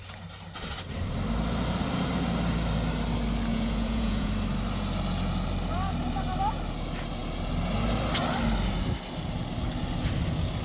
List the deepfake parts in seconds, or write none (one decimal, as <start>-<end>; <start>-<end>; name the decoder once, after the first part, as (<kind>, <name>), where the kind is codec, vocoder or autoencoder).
3.5-4.3 (vocoder, Vocos)